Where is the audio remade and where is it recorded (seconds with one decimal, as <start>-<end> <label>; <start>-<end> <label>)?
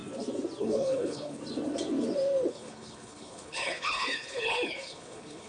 0.0-0.6 recorded; 0.6-1.4 remade; 1.4-2.5 recorded; 2.5-5.5 remade